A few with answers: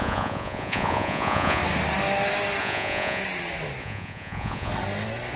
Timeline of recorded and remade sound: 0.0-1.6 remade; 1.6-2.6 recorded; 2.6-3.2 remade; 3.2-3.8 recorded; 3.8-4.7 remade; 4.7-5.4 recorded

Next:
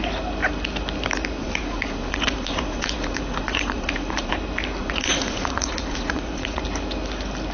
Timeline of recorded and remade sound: 0.0-1.4 recorded; 1.4-4.3 remade; 4.3-4.8 recorded; 4.8-6.6 remade; 6.6-7.5 recorded

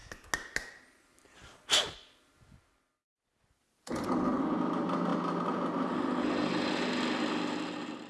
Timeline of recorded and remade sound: 0.0-8.1 recorded

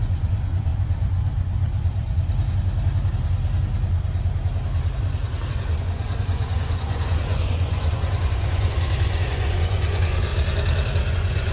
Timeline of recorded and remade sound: 0.0-0.7 remade; 0.7-5.5 recorded; 5.5-10.3 remade; 10.3-11.1 recorded; 11.1-11.5 remade

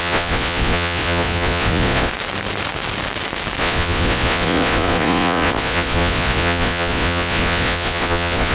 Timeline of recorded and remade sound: 0.0-2.1 remade; 2.1-3.6 recorded; 3.6-8.5 remade

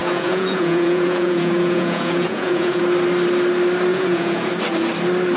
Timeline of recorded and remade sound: 0.0-2.8 remade; 2.8-3.9 recorded; 3.9-4.5 remade; 4.5-5.4 recorded

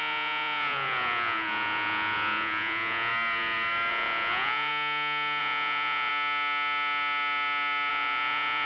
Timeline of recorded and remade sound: 0.0-3.1 remade; 3.1-3.9 recorded; 3.9-4.7 remade; 4.7-5.4 recorded; 5.4-6.1 remade; 6.1-7.9 recorded; 7.9-8.7 remade

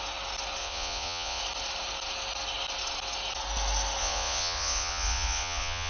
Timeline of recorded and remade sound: 0.0-0.6 recorded; 0.6-1.4 remade; 1.4-4.0 recorded; 4.0-5.9 remade